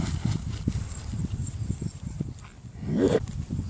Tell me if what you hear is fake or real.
real